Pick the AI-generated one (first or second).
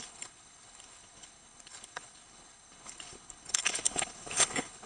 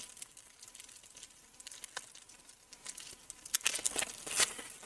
first